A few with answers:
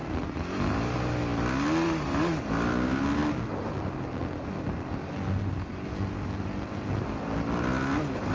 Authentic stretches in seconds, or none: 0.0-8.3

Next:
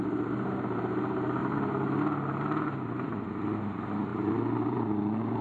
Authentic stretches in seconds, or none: 0.0-1.4; 2.0-4.1

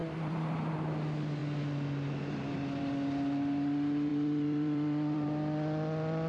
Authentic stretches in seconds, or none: 0.7-4.1

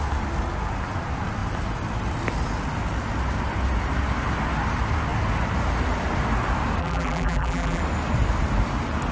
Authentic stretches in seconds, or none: 0.0-6.8; 7.8-9.1